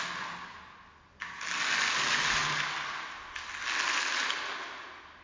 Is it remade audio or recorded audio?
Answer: recorded